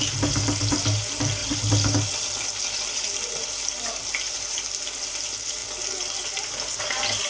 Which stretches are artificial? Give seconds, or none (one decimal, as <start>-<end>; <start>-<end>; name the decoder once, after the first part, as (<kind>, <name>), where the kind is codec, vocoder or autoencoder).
none